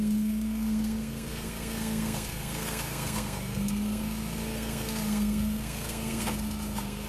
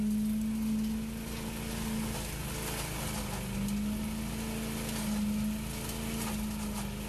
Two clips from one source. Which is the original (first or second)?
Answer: second